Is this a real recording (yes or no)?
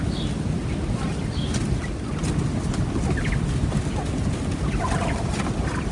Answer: yes